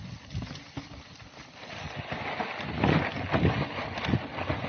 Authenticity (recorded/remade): recorded